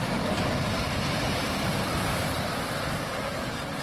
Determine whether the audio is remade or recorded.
remade